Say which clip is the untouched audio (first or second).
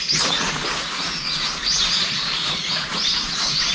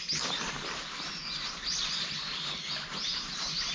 second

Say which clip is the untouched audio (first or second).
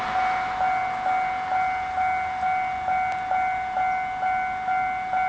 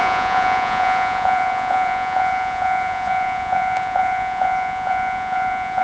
first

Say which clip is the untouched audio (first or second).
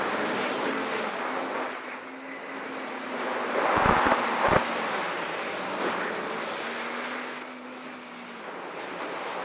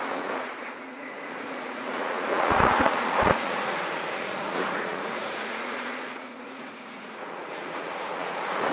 first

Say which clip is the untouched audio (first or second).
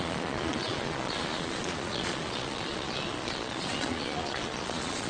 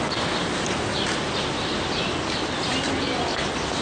second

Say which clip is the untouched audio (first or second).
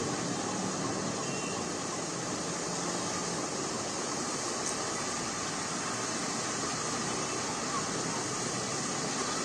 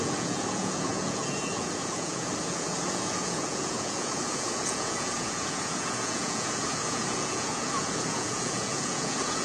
first